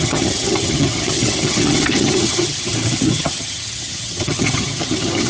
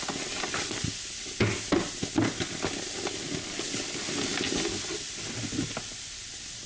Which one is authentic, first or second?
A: second